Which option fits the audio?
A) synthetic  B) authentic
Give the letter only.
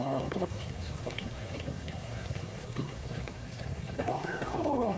A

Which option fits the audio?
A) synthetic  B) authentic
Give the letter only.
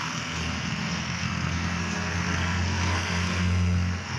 A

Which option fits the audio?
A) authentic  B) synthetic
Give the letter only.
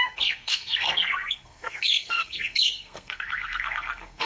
B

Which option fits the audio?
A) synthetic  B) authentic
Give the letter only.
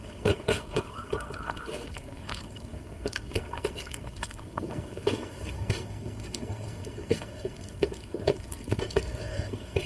A